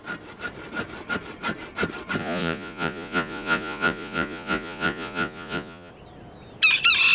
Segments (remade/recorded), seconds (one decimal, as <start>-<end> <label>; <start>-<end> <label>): 0.0-2.2 recorded; 2.2-5.9 remade; 5.9-7.1 recorded